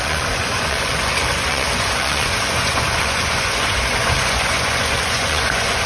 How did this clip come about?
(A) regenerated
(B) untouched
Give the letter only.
A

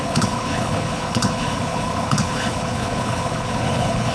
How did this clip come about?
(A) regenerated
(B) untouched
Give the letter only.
A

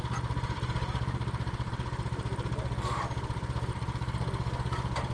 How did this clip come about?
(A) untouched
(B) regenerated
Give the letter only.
A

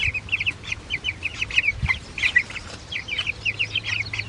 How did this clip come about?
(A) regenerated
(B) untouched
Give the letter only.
B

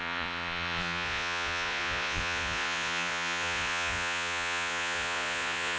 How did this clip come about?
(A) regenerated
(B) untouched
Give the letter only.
A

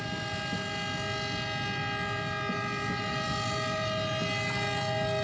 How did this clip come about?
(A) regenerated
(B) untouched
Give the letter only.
B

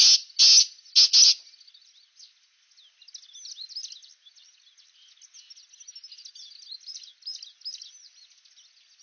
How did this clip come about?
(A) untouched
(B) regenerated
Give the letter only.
A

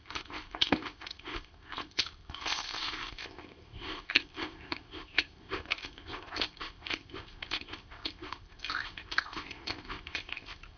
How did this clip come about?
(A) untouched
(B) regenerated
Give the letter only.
B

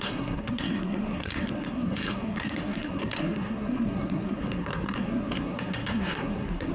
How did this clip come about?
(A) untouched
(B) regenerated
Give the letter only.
B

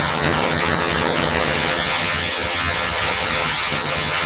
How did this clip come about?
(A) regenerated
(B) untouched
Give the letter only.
A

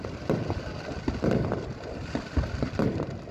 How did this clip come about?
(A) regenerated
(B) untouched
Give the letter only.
B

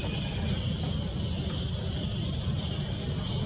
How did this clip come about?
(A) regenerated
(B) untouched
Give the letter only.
B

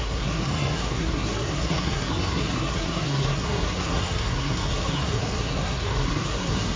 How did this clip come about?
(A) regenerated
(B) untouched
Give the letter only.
A